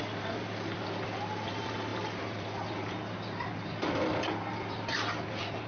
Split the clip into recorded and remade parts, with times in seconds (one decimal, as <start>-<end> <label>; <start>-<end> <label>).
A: 0.0-5.7 recorded